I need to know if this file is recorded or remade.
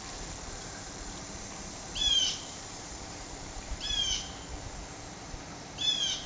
remade